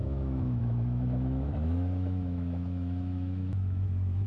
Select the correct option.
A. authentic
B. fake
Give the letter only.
B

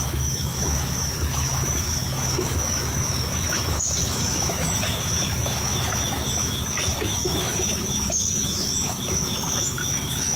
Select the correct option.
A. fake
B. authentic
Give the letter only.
A